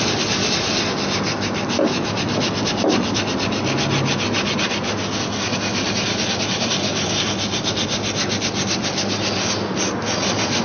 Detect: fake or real real